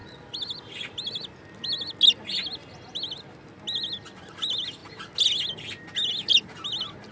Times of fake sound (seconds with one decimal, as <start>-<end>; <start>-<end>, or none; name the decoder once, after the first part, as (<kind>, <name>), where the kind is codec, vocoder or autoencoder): none